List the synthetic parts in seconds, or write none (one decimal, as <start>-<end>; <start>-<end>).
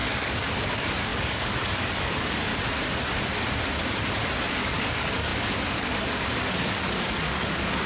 0.0-2.5; 4.5-7.9